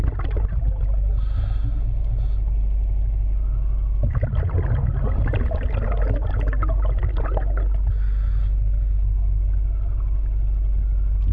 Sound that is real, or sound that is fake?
real